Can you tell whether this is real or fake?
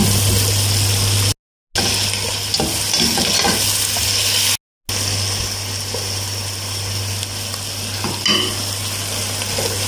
real